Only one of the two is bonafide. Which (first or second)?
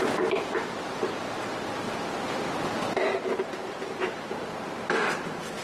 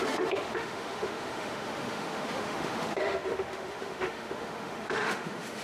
first